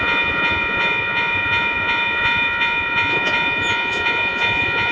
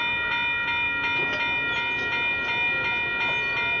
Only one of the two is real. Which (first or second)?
second